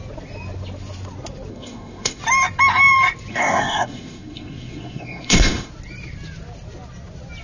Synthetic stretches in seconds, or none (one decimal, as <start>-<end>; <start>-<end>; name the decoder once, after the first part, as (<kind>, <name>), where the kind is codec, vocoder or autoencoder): 1.5-2.2 (codec, SNAC); 3.3-5.7